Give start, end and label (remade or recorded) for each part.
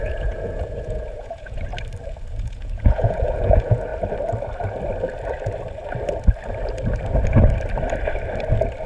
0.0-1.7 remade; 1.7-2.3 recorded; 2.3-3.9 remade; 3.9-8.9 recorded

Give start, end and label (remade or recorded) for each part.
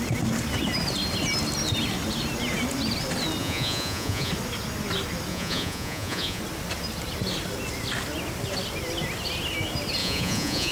0.0-3.4 recorded; 3.4-4.3 remade; 4.3-5.3 recorded; 5.3-6.4 remade; 6.4-10.0 recorded; 10.0-10.7 remade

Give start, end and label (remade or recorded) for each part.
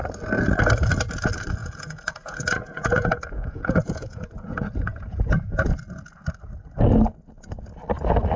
0.0-1.6 recorded; 1.6-5.8 remade; 5.8-8.4 recorded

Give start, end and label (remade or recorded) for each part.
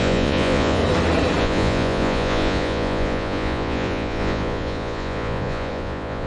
0.0-0.8 remade; 0.8-1.4 recorded; 1.4-6.3 remade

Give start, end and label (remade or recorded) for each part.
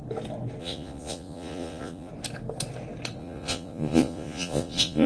0.0-0.6 recorded; 0.6-2.1 remade; 2.1-3.2 recorded; 3.2-5.1 remade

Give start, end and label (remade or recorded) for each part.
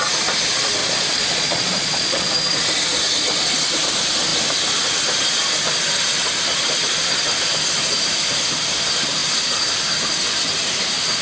0.0-0.8 recorded; 0.8-2.3 remade; 2.3-11.2 recorded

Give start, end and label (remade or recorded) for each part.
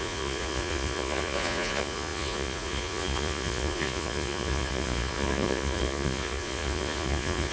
0.0-7.5 remade